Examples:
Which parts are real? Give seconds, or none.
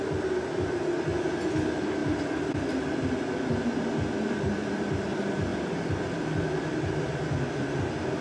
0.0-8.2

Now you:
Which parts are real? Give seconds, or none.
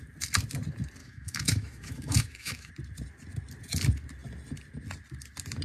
0.0-1.0; 2.7-5.6